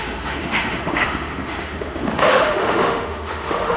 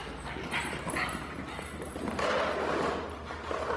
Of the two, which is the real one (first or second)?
second